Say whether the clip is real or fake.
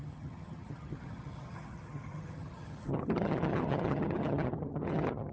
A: fake